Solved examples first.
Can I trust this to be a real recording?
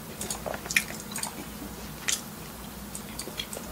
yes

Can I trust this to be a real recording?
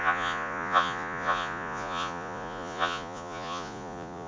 no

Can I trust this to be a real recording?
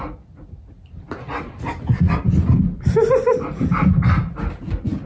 yes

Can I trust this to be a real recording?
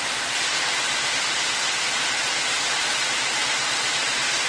yes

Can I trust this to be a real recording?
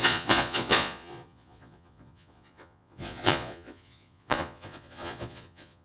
no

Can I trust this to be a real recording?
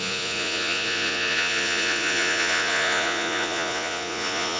no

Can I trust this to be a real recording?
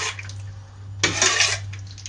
yes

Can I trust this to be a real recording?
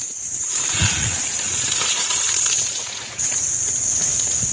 no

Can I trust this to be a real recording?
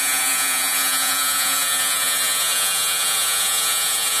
no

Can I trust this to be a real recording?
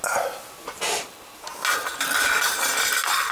yes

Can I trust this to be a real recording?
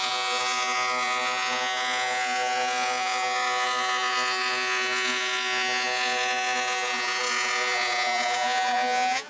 no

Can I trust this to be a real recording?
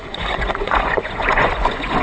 no